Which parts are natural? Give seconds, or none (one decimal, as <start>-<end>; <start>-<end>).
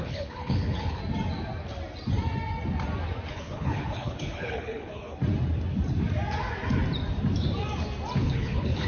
1.0-3.3; 5.2-8.2